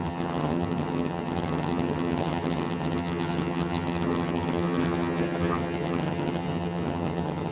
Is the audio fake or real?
fake